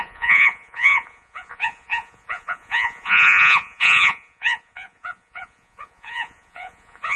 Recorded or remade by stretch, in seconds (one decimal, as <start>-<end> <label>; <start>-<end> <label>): 0.0-7.2 remade